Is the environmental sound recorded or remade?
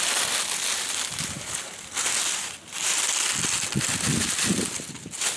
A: recorded